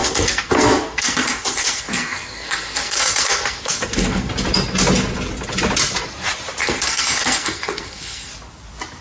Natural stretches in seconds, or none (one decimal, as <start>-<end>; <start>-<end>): 4.3-6.6; 8.3-9.0